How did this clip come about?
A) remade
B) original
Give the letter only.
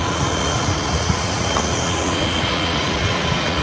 A